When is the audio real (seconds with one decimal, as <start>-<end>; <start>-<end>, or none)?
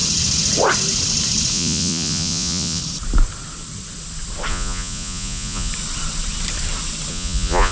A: 0.0-1.5; 2.8-4.5; 5.7-7.1